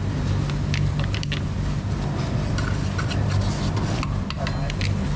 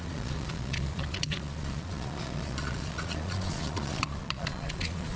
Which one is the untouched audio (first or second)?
first